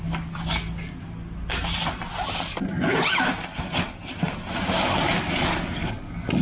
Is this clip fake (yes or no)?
no